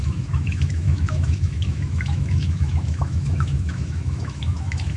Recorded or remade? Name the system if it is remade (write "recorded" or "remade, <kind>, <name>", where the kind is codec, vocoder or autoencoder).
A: remade, autoencoder, DAC-VAE